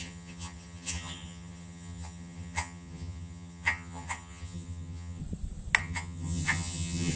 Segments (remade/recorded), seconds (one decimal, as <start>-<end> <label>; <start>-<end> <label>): 0.0-5.2 remade; 5.2-5.8 recorded; 5.8-7.2 remade